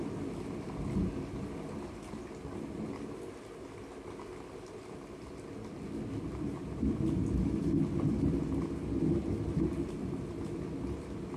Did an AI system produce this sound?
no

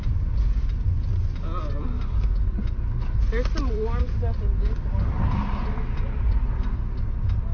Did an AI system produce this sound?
no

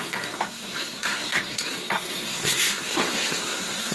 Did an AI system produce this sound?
yes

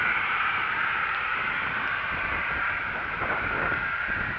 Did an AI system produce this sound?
no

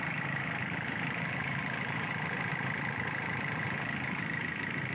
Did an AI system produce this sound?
yes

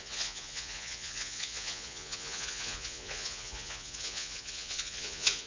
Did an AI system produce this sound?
yes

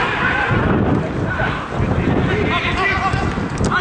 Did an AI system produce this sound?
no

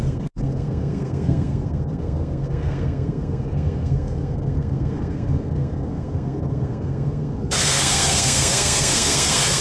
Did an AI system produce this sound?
yes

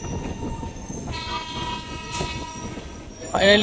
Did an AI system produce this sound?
yes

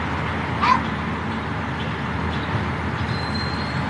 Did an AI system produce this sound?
no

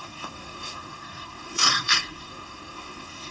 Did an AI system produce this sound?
yes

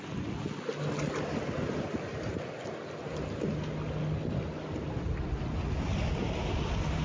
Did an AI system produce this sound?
no